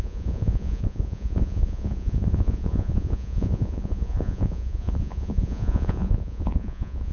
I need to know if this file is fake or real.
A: fake